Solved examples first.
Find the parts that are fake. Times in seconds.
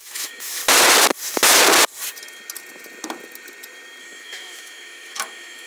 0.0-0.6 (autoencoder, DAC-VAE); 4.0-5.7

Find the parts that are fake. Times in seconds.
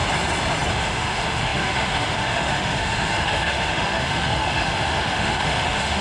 0.7-6.0 (autoencoder, DAC-VAE)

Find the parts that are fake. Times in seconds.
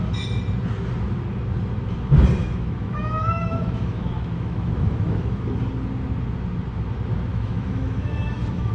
2.4-5.6 (autoencoder, DAC-VAE); 7.3-8.7